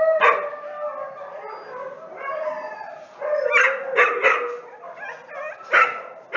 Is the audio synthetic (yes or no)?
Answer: no